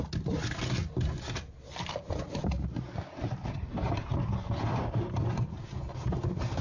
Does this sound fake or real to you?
real